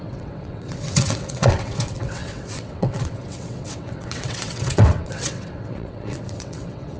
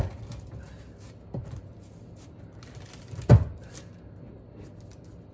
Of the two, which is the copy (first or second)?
first